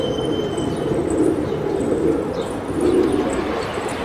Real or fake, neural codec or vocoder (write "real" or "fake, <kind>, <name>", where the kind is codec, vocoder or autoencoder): real